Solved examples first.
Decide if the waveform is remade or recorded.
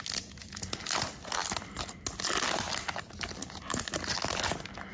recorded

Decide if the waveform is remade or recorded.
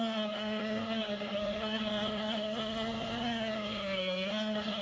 remade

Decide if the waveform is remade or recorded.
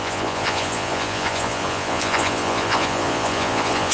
remade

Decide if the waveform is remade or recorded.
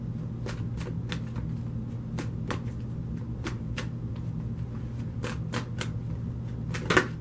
recorded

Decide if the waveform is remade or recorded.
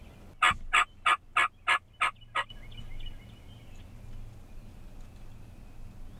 recorded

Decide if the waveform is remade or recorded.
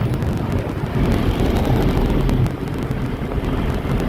recorded